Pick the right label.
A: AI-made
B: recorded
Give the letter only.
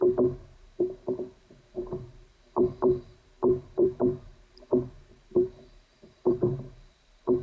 A